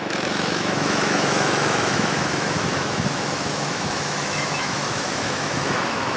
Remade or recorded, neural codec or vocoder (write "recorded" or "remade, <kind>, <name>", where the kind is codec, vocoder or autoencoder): remade, autoencoder, DAC-VAE